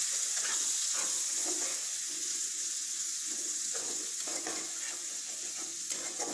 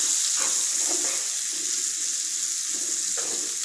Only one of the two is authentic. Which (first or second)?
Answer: second